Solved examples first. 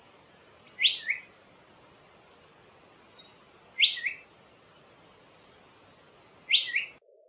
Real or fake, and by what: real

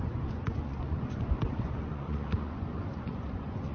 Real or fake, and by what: fake, vocoder, Vocos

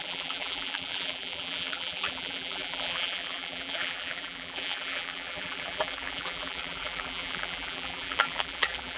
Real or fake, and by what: fake, vocoder, BigVGAN v2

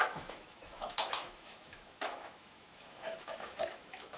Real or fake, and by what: fake, autoencoder, DAC-VAE